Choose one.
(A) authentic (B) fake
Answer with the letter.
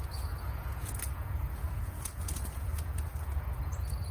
B